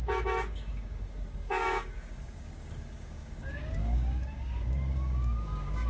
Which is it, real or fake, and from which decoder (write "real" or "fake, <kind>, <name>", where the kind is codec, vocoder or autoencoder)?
fake, codec, DAC